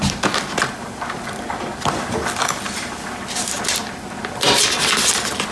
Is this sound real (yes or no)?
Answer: yes